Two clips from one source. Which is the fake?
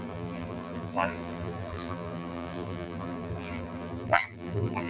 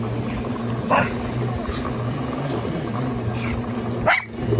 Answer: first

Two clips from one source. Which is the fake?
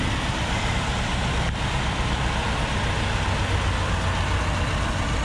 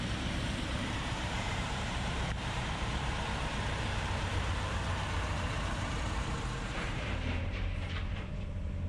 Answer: second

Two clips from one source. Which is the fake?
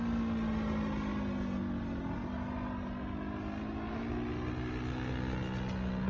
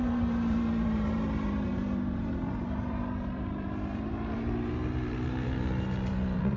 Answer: second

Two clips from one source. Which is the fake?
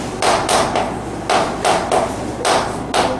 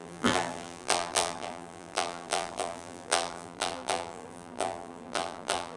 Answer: second